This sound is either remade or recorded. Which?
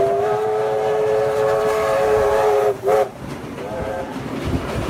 remade